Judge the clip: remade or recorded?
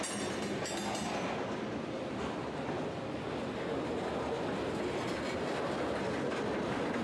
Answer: recorded